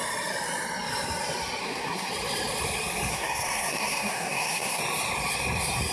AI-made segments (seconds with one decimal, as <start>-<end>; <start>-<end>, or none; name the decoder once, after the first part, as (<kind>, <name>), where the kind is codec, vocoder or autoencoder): 1.6-2.1 (codec, SNAC); 3.1-4.8